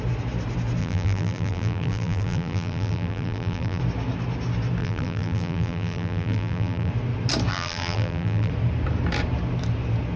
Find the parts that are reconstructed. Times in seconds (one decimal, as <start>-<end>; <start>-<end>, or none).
0.8-3.8; 4.8-6.9; 7.5-8.5